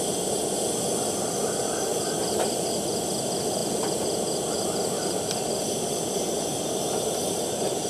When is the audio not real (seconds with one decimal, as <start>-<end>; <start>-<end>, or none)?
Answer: none

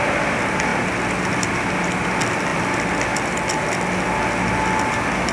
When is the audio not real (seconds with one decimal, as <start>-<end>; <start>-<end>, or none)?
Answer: none

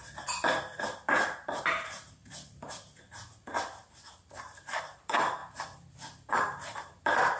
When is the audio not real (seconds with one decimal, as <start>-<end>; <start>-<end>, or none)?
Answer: 0.7-2.2; 4.3-5.4; 6.3-7.4